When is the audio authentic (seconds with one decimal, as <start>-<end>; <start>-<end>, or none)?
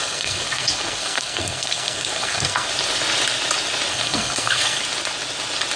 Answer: 2.7-3.9; 4.8-5.8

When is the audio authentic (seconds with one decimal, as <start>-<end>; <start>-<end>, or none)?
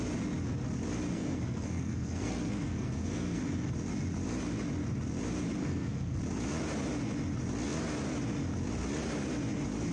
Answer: 0.0-1.1; 3.7-5.6; 6.2-9.9